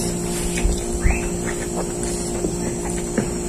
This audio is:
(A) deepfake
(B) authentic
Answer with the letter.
B